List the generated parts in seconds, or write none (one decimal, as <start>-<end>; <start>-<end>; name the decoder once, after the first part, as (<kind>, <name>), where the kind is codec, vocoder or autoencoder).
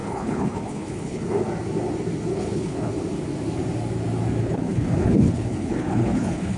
0.0-1.2 (codec, HILCodec); 2.3-2.9; 4.4-6.6